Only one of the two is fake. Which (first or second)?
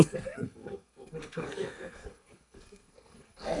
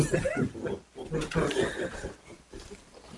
first